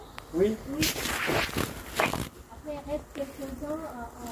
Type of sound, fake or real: real